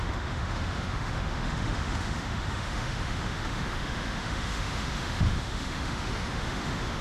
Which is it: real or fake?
fake